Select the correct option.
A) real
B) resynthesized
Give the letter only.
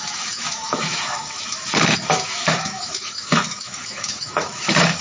B